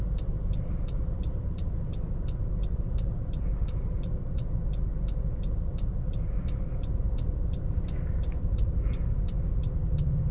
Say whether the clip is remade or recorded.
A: recorded